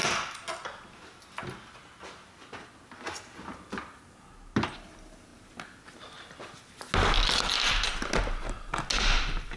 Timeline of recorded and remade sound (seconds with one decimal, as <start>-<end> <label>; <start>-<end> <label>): 0.0-9.6 recorded